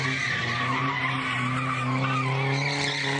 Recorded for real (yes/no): yes